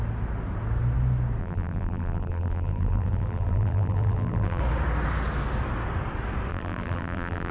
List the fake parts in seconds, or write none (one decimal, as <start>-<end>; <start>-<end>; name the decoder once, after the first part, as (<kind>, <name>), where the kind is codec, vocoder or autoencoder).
1.4-4.6 (vocoder, BigVGAN v2); 6.5-7.5